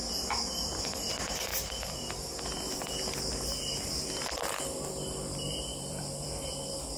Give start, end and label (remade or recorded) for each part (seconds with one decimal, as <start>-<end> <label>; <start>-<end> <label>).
0.0-1.5 recorded; 1.5-2.3 remade; 2.3-5.7 recorded; 5.7-6.5 remade; 6.5-7.0 recorded